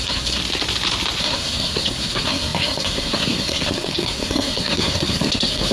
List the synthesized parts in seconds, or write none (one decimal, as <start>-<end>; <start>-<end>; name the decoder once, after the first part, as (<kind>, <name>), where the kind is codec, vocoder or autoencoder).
0.0-0.4 (codec, SNAC); 1.2-5.7